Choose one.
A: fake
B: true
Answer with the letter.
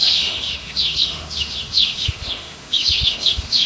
A